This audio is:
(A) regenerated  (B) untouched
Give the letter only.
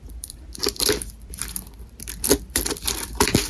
A